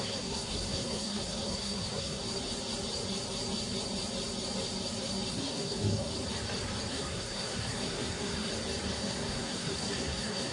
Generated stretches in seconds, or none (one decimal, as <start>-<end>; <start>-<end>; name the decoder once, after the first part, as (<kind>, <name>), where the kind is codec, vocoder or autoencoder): 0.0-2.2 (codec, SNAC); 5.3-6.1; 6.9-8.5; 9.0-10.5